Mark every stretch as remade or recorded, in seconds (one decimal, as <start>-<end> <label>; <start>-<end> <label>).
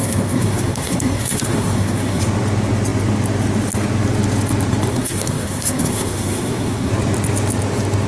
0.0-2.2 remade; 2.2-4.9 recorded; 4.9-6.9 remade; 6.9-8.1 recorded